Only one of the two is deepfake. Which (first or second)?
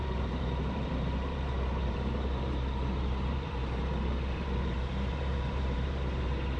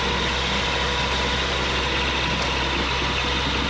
first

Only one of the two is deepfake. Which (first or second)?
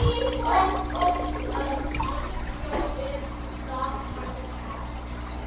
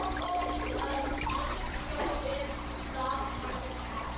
second